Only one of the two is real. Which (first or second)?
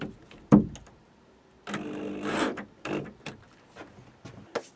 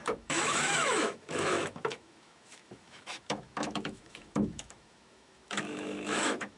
first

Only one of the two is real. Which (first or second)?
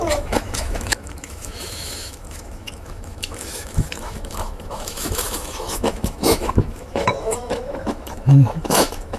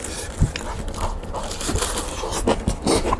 second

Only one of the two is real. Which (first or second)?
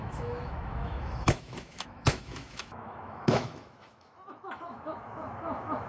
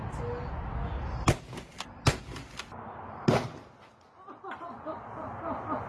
second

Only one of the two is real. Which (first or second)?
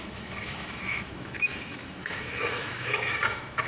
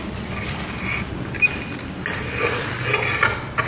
second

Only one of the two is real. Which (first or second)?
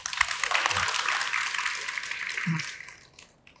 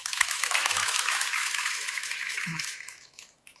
first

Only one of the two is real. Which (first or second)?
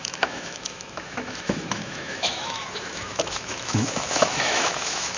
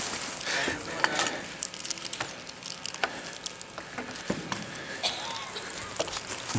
second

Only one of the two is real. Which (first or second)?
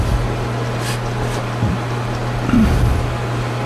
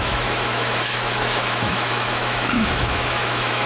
first